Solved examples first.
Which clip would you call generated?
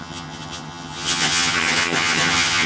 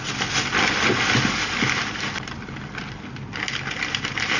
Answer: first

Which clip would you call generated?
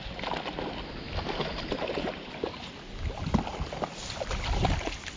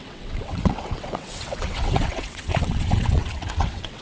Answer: second